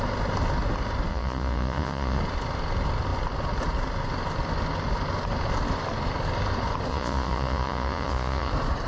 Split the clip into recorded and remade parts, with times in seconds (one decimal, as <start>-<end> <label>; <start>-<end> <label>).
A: 0.0-1.1 recorded; 1.1-2.2 remade; 2.2-6.9 recorded; 6.9-8.5 remade; 8.5-8.9 recorded